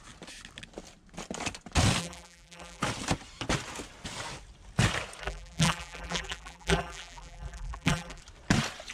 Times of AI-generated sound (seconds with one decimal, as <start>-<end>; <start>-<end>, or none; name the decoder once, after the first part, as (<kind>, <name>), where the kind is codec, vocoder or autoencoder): 2.0-2.8 (vocoder, BigVGAN v2); 5.2-8.2